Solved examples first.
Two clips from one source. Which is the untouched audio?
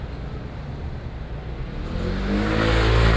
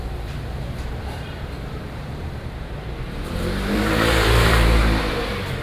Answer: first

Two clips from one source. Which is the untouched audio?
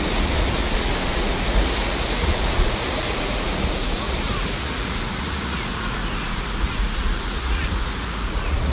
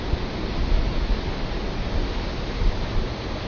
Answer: second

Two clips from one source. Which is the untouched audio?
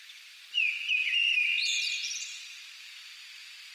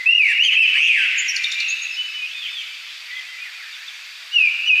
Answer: second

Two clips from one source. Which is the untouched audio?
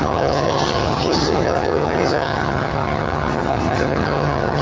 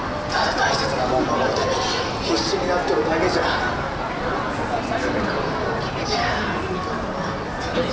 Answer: second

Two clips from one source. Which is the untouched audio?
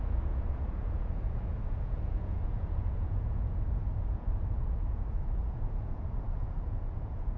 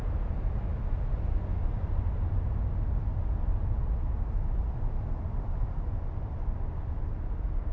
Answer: second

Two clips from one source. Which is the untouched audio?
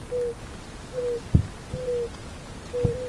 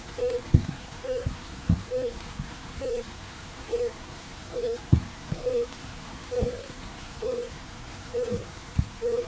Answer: first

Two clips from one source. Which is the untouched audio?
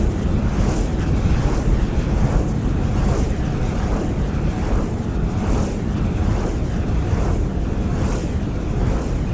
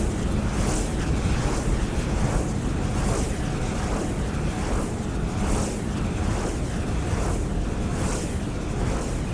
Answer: second